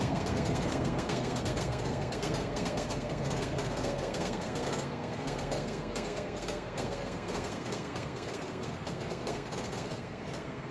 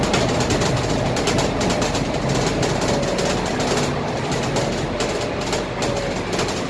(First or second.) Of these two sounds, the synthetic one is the first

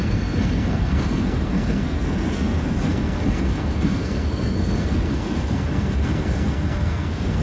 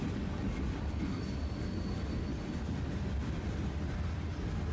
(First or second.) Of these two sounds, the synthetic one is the first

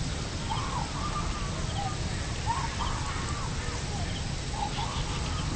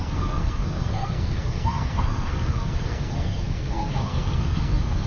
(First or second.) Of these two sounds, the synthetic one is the second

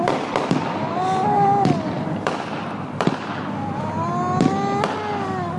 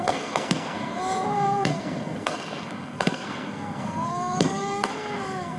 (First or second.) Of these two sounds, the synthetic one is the second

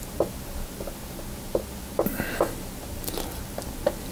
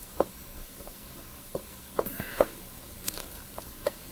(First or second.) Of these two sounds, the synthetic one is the second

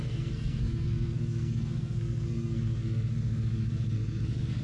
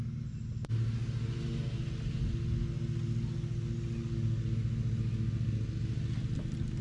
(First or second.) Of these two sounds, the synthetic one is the first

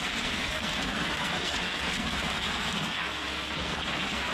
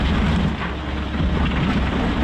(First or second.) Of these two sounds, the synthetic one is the first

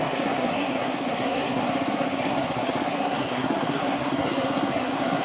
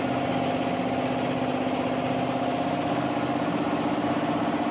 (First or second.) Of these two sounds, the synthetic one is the first